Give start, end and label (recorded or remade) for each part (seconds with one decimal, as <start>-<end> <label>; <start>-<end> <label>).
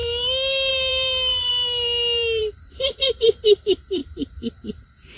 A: 0.0-0.7 recorded; 0.7-1.5 remade; 1.5-2.4 recorded; 2.4-5.2 remade